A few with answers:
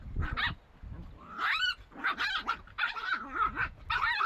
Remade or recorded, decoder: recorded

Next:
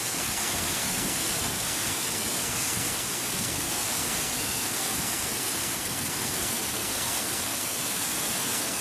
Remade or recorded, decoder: remade, codec, SNAC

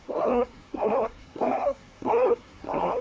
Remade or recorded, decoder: remade, codec, SNAC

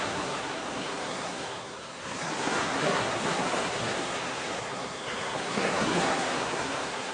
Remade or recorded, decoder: remade, codec, SNAC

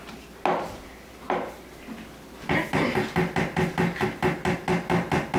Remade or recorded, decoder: recorded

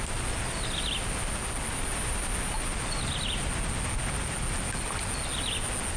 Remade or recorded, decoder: recorded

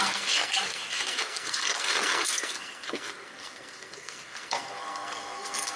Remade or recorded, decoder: remade, codec, SNAC